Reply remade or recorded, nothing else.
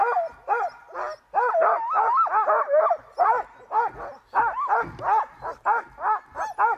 recorded